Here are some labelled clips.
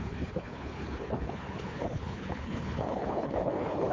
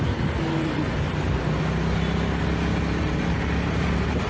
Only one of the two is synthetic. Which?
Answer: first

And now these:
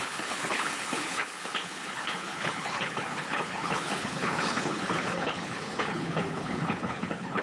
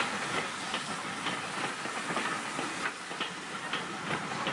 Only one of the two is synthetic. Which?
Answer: first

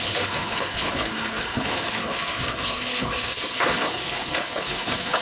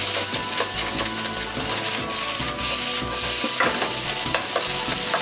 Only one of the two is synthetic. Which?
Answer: first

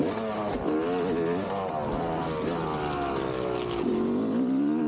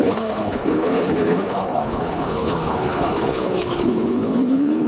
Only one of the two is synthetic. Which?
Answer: second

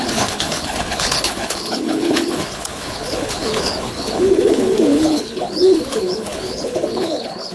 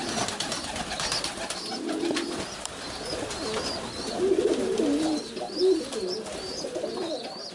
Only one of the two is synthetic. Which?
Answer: first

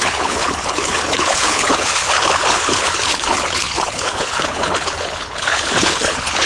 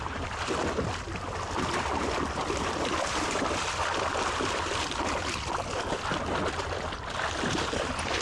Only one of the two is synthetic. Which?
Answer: first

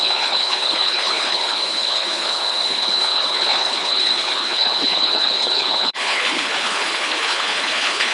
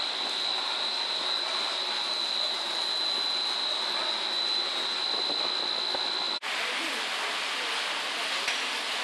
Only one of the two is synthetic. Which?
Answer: first